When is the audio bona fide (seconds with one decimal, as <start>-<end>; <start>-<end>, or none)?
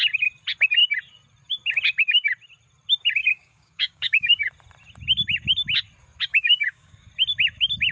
0.0-3.2; 4.5-6.3; 7.1-7.9